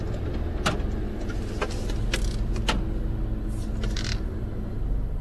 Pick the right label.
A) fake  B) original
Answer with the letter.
B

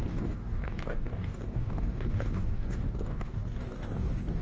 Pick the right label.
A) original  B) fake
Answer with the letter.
B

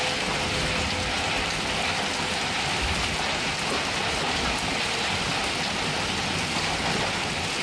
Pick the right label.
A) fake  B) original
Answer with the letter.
B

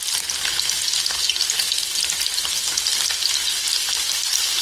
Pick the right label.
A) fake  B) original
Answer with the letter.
B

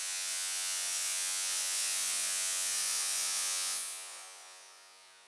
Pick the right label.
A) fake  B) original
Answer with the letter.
A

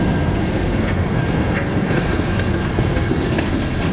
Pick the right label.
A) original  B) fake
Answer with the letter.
B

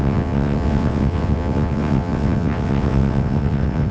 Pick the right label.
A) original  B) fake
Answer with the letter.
B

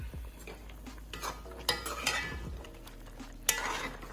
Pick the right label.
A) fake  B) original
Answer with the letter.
B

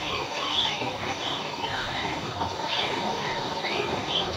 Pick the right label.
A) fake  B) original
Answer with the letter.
A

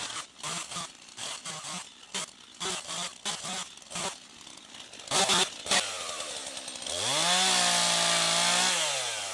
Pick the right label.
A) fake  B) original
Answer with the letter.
B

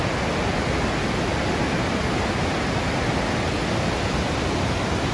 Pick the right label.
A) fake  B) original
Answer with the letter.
B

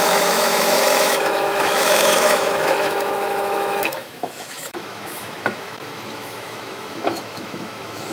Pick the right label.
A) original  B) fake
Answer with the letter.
B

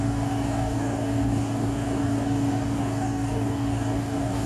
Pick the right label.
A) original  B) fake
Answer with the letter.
B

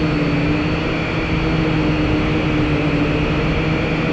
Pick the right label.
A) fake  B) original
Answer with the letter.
B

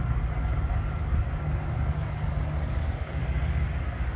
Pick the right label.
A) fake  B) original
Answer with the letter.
A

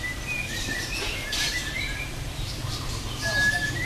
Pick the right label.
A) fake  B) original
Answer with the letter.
A